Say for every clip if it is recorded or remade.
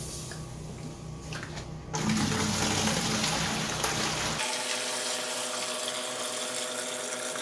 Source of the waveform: recorded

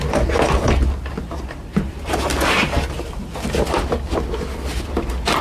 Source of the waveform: recorded